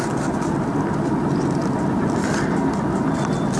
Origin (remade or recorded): recorded